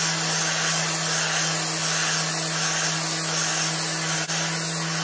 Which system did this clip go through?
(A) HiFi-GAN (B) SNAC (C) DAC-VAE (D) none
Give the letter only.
D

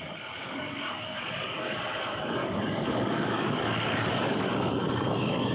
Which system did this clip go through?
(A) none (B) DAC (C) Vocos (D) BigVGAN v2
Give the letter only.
B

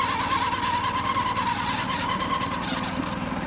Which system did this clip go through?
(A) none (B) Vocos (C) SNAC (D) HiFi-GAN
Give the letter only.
A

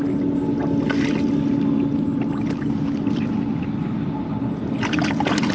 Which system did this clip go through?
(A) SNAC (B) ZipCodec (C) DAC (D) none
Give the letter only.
D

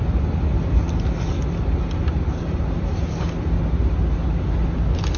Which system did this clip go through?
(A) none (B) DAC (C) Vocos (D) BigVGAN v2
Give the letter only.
A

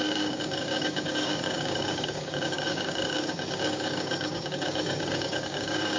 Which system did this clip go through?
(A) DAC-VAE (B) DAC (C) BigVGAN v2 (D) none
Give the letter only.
B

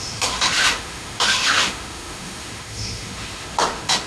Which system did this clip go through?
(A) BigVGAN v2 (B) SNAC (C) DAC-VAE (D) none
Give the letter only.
C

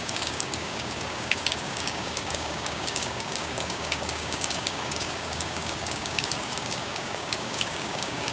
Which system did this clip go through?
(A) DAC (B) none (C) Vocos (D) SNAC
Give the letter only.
A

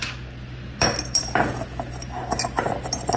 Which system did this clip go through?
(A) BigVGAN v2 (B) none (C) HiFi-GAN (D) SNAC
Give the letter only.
B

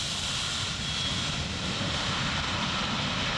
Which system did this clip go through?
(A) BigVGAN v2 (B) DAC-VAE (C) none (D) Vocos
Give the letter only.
C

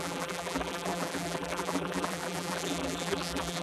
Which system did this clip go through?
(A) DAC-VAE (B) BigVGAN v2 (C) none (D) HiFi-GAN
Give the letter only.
B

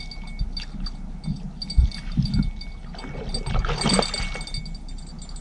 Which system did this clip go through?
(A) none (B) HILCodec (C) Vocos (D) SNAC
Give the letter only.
A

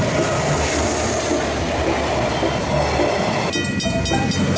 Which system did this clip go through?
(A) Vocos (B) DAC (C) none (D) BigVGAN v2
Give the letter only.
D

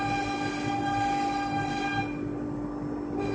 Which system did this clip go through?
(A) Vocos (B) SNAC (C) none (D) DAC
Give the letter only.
C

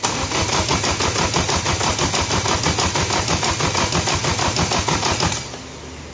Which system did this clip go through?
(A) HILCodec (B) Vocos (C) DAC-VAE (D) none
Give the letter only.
D